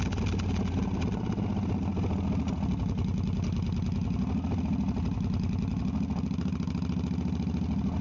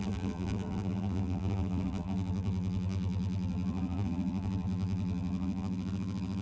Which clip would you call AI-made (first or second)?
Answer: second